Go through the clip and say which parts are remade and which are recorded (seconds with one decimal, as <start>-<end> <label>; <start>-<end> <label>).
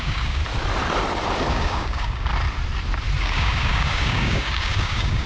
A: 0.0-0.4 remade; 0.4-1.5 recorded; 1.5-2.3 remade; 2.3-3.2 recorded; 3.2-5.3 remade